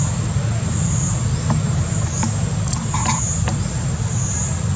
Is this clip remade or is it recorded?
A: recorded